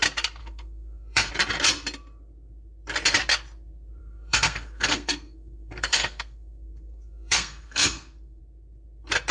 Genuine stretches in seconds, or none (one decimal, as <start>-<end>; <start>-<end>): 0.0-0.4; 1.3-4.0; 8.4-9.3